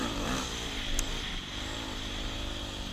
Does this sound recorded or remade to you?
remade